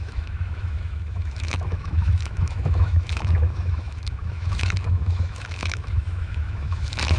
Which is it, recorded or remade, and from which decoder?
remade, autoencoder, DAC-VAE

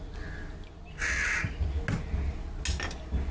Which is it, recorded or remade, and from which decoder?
recorded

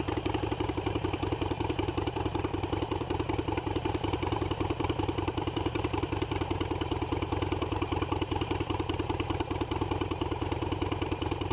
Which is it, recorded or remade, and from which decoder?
remade, vocoder, BigVGAN v2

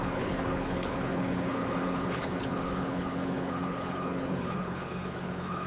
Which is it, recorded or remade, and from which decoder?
remade, codec, HILCodec